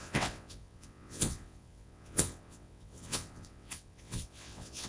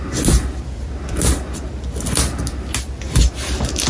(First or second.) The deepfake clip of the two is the first